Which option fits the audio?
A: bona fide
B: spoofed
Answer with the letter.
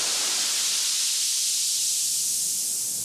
A